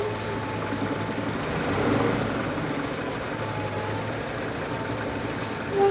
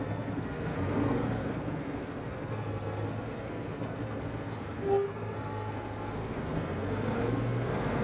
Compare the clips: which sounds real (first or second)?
first